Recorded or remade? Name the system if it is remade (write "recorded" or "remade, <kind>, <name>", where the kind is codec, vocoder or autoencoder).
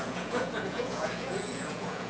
remade, vocoder, Vocos